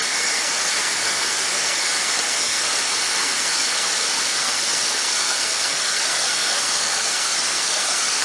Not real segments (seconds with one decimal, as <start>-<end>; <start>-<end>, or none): 0.0-8.2